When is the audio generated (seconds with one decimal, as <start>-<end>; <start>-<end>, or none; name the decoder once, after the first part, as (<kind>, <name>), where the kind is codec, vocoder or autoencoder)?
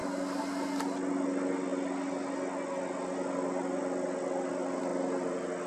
none